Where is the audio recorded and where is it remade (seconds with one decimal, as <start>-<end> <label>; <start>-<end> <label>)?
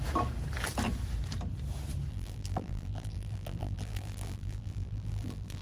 0.0-2.1 recorded; 2.1-5.6 remade